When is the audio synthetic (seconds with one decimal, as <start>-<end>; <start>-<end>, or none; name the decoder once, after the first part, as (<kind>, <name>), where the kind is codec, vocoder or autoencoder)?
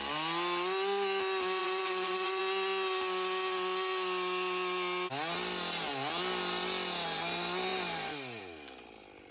1.6-2.4 (vocoder, WaveNeXt)